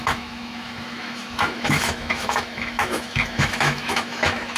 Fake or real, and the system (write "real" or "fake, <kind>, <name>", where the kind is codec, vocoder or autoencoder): fake, autoencoder, DAC-VAE